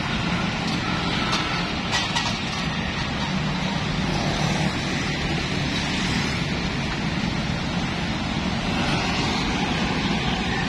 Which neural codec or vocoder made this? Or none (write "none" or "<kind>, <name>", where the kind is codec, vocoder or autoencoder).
none